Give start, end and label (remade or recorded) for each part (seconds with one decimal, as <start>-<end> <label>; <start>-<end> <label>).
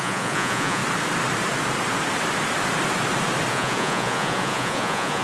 0.0-0.8 remade; 0.8-3.5 recorded; 3.5-5.2 remade